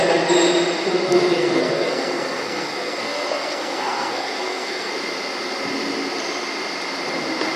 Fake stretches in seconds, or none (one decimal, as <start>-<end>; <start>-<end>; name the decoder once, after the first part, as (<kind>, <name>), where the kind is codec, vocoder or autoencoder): 1.4-4.9 (codec, SNAC)